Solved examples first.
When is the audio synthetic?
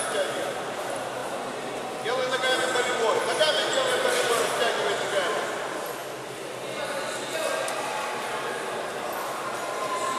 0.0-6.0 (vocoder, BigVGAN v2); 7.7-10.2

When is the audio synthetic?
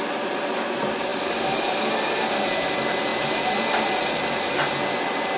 none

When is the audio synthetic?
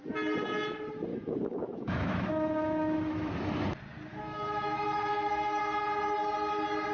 1.1-3.3 (autoencoder, DAC-VAE); 4.1-5.6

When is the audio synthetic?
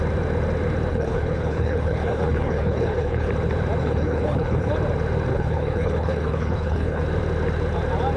0.9-3.3 (codec, HILCodec); 3.8-4.7; 5.3-7.0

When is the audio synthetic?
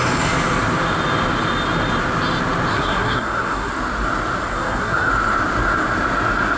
2.7-3.7 (codec, SNAC); 4.5-5.1